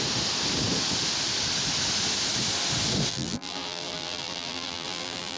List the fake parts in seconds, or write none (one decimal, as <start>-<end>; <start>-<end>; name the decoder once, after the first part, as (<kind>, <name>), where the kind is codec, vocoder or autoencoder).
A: 3.1-5.4 (vocoder, BigVGAN v2)